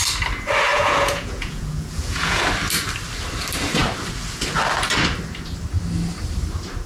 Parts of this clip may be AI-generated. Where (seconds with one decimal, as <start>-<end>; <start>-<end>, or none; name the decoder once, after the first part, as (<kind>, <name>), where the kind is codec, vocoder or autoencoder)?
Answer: 0.7-2.4 (vocoder, Vocos)